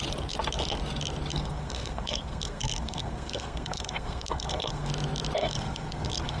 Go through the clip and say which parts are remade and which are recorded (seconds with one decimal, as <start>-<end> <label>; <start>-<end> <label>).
0.0-1.3 recorded; 1.3-4.9 remade; 4.9-5.4 recorded; 5.4-6.4 remade